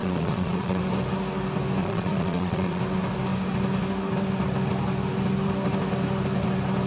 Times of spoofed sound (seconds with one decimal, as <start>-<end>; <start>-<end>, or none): 0.0-0.8; 1.8-2.8